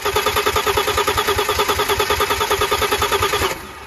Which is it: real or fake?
real